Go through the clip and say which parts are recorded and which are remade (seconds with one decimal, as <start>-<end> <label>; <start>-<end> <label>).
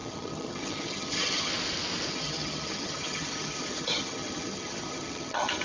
0.0-1.5 remade; 1.5-2.1 recorded; 2.1-5.6 remade